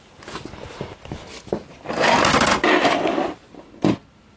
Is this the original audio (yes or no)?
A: yes